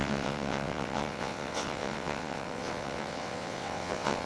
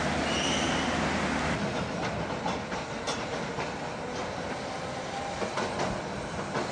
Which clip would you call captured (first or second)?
second